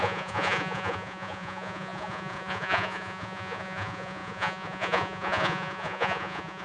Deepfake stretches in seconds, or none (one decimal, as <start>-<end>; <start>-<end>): 0.0-6.6

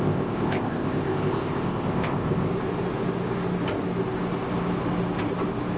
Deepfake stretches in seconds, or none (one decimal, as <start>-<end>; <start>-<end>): 0.0-2.5

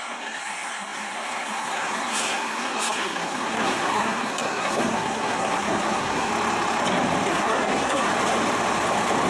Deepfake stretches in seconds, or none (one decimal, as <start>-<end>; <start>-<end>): 0.0-6.3; 7.3-8.1

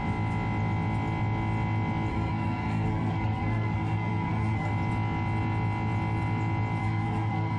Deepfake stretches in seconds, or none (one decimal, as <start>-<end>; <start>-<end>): 2.1-4.7; 6.8-7.6